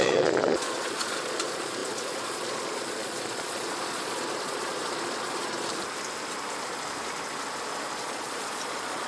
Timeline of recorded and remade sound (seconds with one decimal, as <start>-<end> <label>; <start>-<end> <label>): 0.0-5.7 remade; 5.7-8.0 recorded; 8.0-9.1 remade